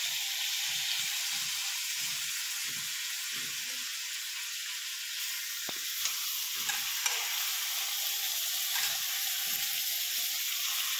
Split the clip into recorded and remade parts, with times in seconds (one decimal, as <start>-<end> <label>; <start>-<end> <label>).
0.0-11.0 recorded